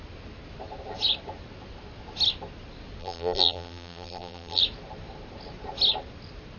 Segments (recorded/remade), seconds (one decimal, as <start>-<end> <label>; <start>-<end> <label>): 0.0-3.0 recorded; 3.0-4.6 remade; 4.6-6.6 recorded